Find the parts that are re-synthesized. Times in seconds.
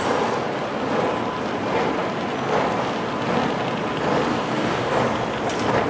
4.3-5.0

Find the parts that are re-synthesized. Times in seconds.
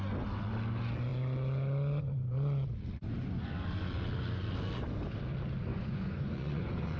5.7-7.0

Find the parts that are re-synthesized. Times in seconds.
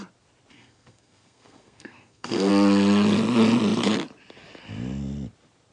0.5-2.5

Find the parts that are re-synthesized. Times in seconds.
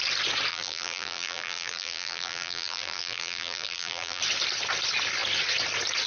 0.5-4.2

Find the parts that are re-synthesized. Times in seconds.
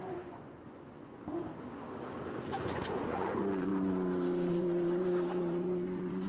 0.0-1.4; 2.5-3.7; 4.5-6.3